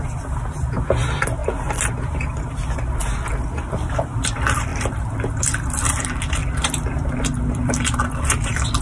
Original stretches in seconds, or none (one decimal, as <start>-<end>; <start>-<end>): 1.4-3.7; 6.4-7.5